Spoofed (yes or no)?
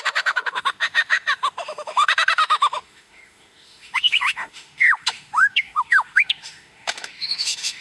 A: yes